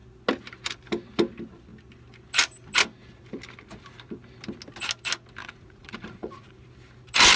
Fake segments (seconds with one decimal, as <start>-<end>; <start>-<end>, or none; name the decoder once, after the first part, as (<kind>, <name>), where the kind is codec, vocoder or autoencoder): 5.4-6.5 (vocoder, Vocos)